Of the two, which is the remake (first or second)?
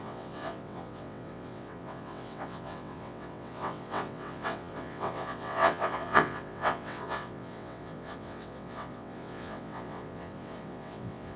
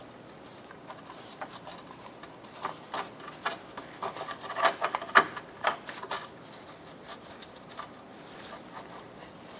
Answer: first